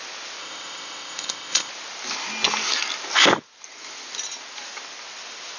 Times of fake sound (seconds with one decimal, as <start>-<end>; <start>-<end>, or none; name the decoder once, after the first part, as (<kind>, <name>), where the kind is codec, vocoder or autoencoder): 0.4-1.7 (codec, ZipCodec)

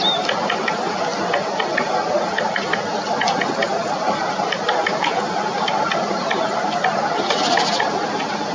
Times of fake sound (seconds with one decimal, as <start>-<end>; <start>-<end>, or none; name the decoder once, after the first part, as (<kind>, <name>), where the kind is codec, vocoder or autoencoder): none

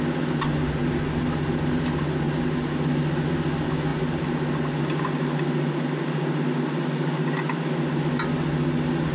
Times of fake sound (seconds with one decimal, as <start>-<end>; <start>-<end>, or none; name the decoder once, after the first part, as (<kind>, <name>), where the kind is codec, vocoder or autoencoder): none

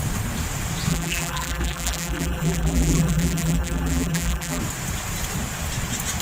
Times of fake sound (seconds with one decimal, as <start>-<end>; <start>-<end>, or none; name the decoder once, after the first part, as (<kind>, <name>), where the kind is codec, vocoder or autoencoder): 0.9-4.6 (vocoder, BigVGAN v2)

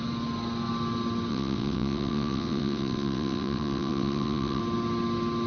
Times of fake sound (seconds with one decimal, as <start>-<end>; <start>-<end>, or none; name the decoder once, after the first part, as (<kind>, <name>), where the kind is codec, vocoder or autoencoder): 1.3-4.6 (vocoder, WaveNeXt)

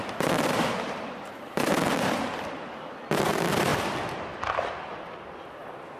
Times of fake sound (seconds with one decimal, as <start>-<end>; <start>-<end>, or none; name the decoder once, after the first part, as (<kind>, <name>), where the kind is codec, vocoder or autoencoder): 0.0-6.0 (vocoder, BigVGAN v2)